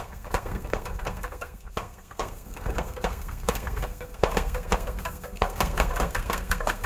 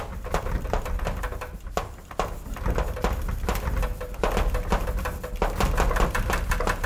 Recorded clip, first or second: second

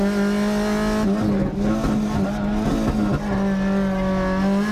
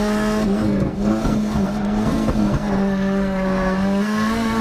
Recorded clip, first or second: first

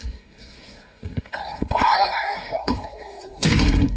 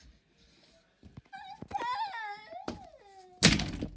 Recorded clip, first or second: second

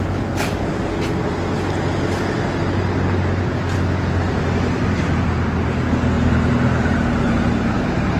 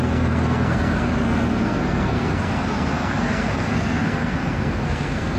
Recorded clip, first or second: first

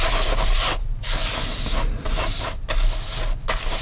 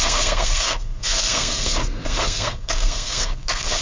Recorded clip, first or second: first